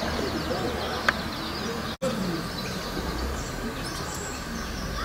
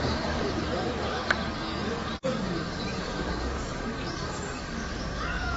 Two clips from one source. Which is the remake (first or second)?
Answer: second